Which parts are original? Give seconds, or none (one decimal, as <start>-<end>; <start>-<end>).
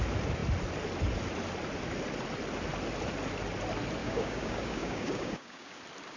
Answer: 0.0-4.0; 5.8-6.2